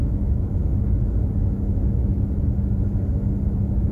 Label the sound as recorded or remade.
recorded